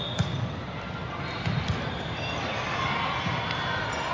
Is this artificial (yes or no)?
no